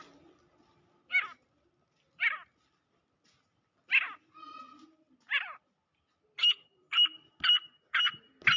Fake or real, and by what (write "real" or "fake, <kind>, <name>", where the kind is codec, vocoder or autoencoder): real